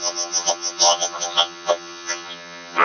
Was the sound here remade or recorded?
remade